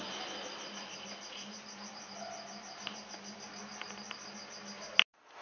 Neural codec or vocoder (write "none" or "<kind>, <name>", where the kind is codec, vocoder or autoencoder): none